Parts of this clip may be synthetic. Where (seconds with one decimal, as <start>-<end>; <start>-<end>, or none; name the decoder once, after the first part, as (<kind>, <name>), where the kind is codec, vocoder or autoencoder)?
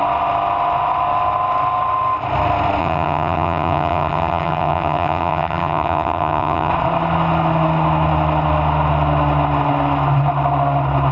2.8-6.7 (vocoder, HiFi-GAN)